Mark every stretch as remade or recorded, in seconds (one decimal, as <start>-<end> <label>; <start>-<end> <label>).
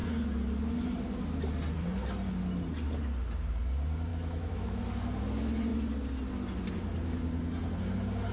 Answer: 0.0-4.1 recorded; 4.1-4.8 remade; 4.8-8.3 recorded